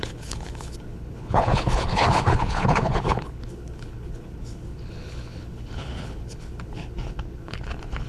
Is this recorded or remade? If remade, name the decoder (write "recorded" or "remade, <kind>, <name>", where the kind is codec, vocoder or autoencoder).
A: remade, codec, HILCodec